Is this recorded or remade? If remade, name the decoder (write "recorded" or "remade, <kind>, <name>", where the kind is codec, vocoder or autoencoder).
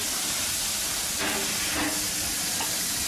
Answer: recorded